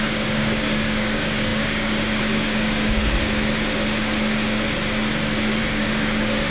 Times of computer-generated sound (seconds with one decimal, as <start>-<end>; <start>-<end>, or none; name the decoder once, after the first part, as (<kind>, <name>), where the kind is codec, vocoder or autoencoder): 0.0-3.0 (codec, DAC); 5.6-6.5